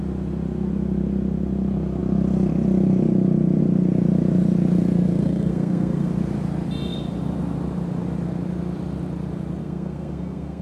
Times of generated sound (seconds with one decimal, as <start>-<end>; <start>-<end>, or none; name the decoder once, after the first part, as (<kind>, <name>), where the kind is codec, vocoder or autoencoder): 5.2-6.1 (codec, SNAC); 9.6-10.6